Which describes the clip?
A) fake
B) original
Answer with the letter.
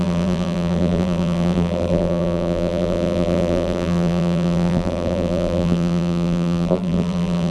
A